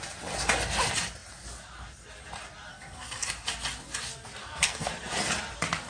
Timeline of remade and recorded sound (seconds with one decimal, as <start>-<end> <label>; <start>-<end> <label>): 0.0-2.7 recorded; 2.7-3.3 remade; 3.3-4.4 recorded; 4.4-4.9 remade; 4.9-5.9 recorded